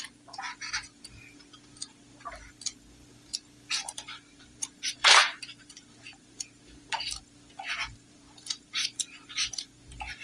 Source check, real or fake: fake